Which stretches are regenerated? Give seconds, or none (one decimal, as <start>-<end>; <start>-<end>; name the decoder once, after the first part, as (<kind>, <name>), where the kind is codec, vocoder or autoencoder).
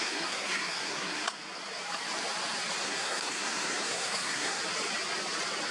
0.0-1.4 (codec, SNAC); 2.8-4.6